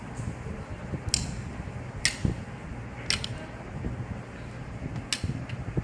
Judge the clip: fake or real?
real